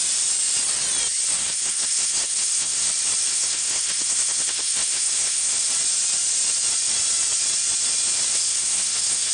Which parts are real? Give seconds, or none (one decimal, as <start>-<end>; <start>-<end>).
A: 0.0-1.4; 2.9-3.3; 5.7-8.3